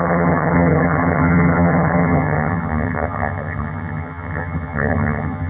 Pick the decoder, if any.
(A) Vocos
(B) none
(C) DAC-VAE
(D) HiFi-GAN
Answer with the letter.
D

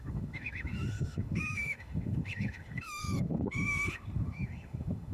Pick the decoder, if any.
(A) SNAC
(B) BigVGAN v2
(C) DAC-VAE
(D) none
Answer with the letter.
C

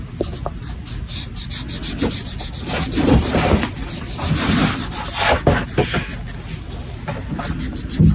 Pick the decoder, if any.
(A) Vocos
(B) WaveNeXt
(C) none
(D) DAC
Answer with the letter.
C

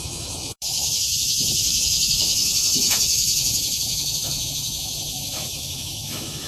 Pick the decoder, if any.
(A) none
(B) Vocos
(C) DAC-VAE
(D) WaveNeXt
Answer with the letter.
C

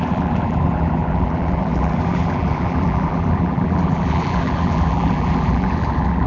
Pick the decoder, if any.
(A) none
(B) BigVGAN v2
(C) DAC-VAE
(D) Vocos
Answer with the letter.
B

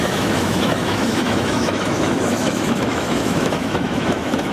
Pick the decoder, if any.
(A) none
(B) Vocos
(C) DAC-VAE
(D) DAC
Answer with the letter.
C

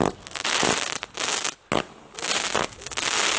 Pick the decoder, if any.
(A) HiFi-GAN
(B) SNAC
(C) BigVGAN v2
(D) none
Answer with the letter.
D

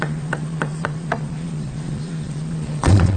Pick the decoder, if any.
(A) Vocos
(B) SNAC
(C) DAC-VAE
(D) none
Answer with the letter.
A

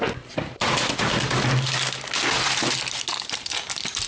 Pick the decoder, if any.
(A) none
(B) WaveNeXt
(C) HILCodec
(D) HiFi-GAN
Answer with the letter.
A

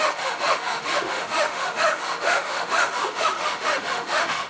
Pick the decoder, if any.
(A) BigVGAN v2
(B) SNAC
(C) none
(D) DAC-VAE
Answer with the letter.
D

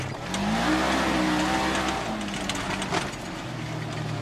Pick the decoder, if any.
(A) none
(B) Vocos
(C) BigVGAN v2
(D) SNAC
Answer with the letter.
A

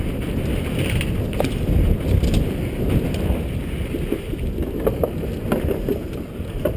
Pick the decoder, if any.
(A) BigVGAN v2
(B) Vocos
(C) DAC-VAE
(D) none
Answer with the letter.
D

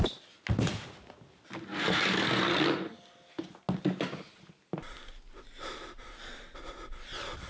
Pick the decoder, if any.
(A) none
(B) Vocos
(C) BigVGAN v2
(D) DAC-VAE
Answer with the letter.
A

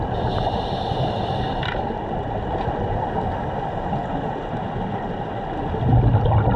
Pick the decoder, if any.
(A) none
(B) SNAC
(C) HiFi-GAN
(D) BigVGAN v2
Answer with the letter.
A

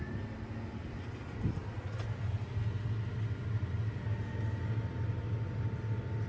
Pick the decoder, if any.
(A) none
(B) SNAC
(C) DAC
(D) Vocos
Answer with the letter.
A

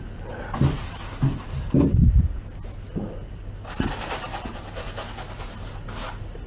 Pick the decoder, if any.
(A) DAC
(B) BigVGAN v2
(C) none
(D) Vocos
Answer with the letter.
C